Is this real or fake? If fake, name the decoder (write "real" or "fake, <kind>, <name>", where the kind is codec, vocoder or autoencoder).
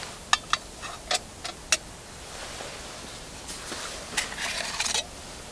real